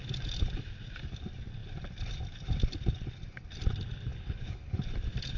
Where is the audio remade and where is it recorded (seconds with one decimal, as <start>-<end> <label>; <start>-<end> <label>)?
0.0-4.1 recorded; 4.1-4.7 remade; 4.7-5.4 recorded